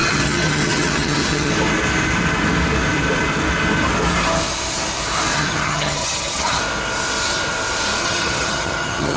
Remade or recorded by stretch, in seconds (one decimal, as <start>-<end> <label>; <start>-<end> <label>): 0.0-1.5 remade; 1.5-5.3 recorded; 5.3-6.6 remade; 6.6-8.0 recorded; 8.0-9.2 remade